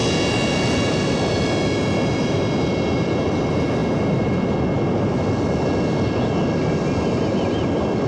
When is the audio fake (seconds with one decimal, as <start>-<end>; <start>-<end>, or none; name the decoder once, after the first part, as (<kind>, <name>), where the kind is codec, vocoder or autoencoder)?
none